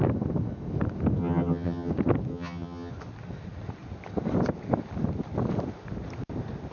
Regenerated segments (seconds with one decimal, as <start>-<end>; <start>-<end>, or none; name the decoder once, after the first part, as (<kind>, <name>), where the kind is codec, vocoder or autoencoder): 1.2-1.9 (vocoder, HiFi-GAN); 2.3-2.9